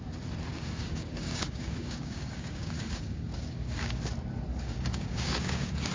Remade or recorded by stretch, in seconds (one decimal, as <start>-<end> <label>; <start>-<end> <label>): 0.0-0.5 recorded; 0.5-4.0 remade; 4.0-4.5 recorded; 4.5-5.9 remade